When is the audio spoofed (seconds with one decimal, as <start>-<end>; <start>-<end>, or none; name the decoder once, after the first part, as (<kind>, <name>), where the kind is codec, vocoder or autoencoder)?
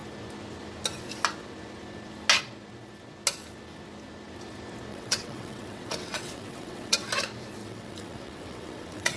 4.9-7.1 (vocoder, WaveNeXt); 7.6-9.2